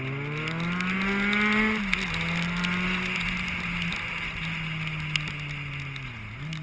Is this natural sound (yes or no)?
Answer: yes